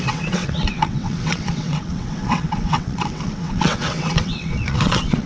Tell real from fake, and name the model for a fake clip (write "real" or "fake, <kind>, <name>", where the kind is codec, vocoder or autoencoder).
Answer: fake, vocoder, WaveNeXt